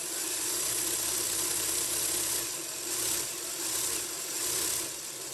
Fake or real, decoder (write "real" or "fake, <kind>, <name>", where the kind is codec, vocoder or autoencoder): real